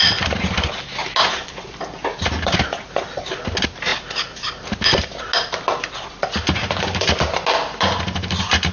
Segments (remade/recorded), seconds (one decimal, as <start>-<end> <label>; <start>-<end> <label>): 0.0-8.7 recorded